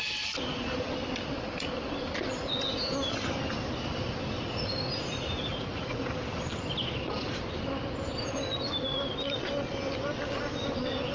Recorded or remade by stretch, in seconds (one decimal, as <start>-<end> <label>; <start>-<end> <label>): 0.0-5.5 recorded; 5.5-6.1 remade; 6.1-11.1 recorded